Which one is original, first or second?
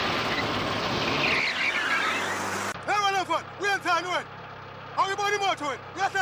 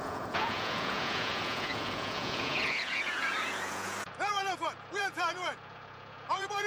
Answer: first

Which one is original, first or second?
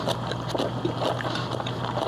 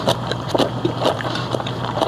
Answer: first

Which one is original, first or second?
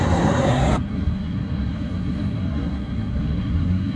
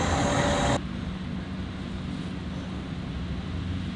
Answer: second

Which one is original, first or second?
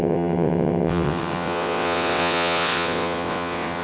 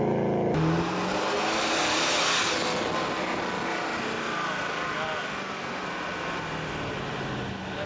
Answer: second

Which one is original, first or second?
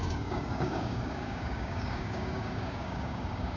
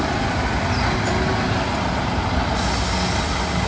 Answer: second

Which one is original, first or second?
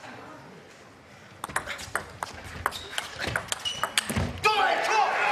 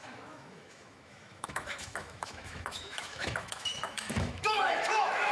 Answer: first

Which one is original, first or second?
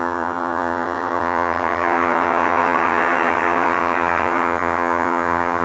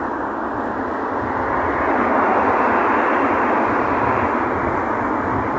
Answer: second